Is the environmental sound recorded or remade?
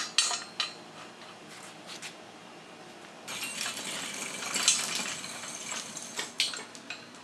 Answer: recorded